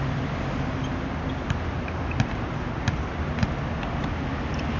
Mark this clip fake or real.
real